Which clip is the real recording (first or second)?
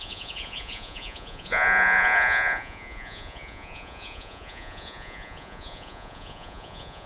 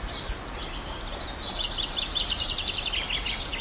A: second